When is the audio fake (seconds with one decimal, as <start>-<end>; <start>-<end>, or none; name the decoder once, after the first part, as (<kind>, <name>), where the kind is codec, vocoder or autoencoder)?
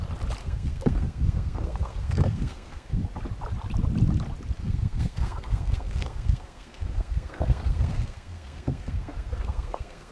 0.4-3.0 (codec, SNAC); 4.6-10.1